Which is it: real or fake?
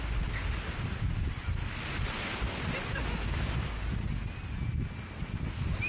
real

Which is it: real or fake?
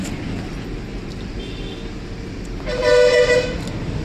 real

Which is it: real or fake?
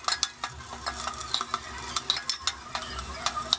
real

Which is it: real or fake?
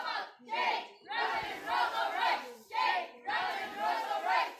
real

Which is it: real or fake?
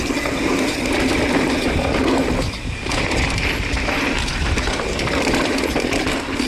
real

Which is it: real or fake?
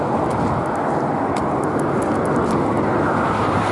real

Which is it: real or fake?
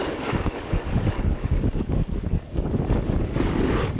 fake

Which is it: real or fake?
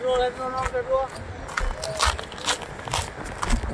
real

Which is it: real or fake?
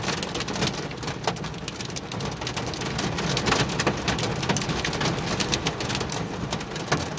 real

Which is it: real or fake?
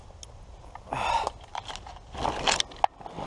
real